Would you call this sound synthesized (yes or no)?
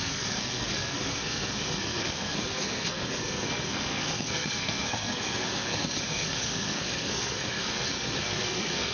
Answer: yes